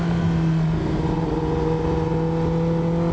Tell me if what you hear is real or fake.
real